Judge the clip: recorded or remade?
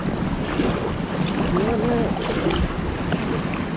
recorded